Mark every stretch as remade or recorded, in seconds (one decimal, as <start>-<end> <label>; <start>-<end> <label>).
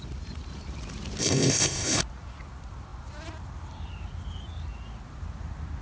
0.0-1.2 recorded; 1.2-2.0 remade; 2.0-5.8 recorded